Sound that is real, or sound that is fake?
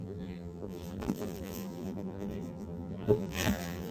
fake